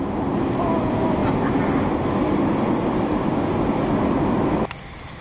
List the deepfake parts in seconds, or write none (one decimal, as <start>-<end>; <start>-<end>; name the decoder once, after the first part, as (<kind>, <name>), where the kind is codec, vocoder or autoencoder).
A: none